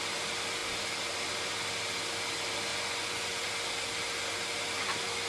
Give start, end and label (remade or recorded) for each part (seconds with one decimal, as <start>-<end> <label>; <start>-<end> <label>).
0.0-2.7 recorded; 2.7-3.5 remade; 3.5-5.3 recorded